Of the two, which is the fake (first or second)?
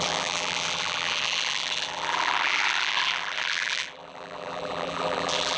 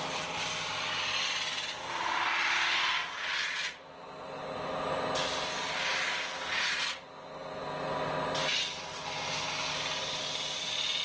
first